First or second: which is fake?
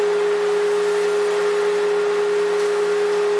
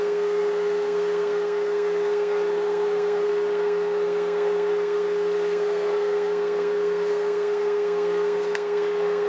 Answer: second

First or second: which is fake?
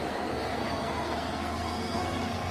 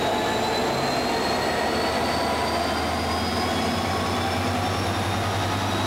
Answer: first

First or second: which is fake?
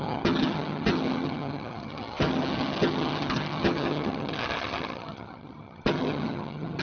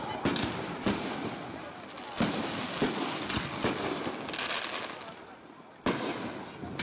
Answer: first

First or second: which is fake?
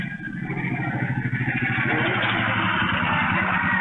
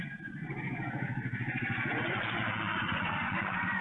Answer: second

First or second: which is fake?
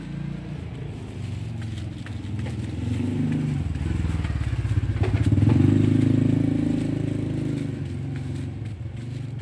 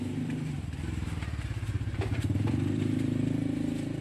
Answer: second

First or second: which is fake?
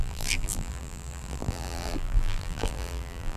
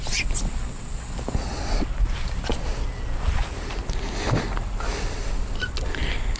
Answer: first